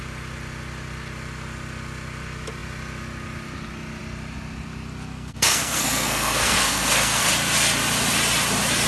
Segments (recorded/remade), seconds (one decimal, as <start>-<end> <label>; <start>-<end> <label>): 0.0-5.1 recorded; 5.1-7.3 remade; 7.3-8.9 recorded